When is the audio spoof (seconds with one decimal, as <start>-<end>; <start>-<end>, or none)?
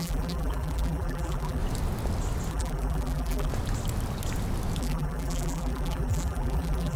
0.0-1.6; 2.5-3.5; 4.8-7.0